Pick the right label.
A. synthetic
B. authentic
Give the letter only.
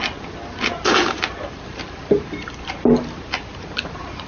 B